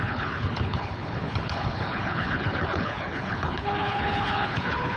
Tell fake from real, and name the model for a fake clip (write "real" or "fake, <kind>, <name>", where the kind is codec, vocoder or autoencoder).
fake, codec, HILCodec